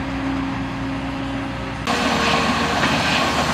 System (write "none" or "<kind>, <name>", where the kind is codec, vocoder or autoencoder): none